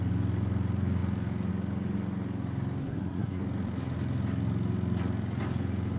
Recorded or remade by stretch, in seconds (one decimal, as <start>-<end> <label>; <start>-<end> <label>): 0.0-2.8 recorded; 2.8-3.4 remade; 3.4-6.0 recorded